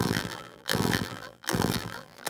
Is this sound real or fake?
fake